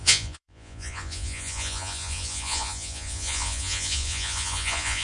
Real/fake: fake